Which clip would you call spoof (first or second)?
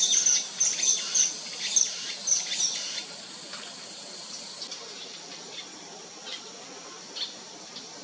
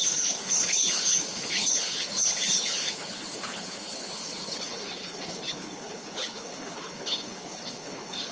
second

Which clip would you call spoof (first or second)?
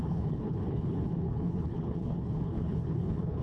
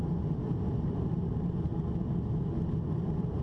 first